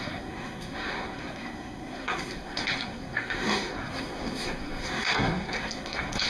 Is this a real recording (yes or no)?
no